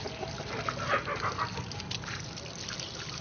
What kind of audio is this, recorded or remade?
recorded